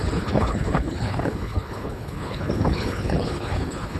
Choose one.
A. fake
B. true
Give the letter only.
A